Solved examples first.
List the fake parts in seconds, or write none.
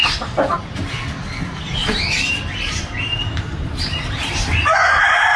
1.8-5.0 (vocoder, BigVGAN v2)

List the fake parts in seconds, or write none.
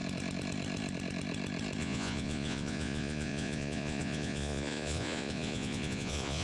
1.8-6.4 (vocoder, Vocos)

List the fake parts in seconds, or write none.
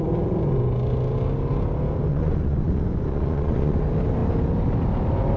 2.1-3.8 (vocoder, Vocos)